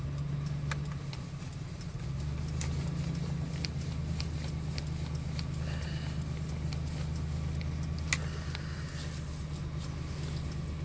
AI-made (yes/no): no